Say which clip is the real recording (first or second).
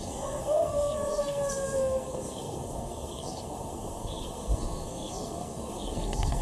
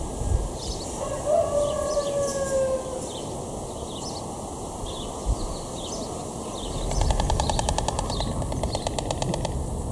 second